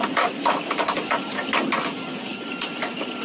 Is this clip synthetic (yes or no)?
no